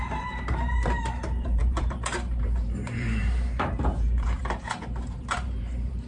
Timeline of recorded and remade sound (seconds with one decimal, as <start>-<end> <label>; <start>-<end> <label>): 0.0-6.1 remade